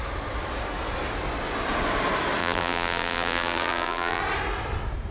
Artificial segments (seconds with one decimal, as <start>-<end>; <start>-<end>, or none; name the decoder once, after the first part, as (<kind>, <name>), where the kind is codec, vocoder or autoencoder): 2.4-4.2 (vocoder, BigVGAN v2)